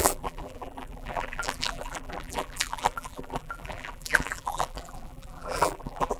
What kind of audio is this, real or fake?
fake